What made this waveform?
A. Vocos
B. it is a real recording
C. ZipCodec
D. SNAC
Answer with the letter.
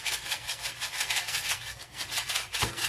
D